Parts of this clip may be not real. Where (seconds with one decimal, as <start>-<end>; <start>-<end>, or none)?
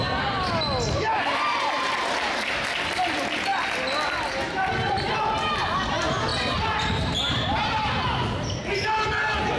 none